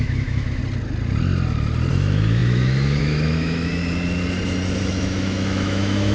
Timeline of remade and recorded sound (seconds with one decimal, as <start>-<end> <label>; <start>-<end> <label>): 0.0-0.6 remade; 0.6-1.9 recorded; 1.9-3.8 remade; 3.8-4.8 recorded; 4.8-6.1 remade